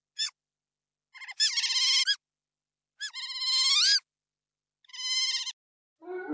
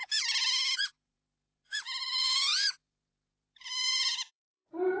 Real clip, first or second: first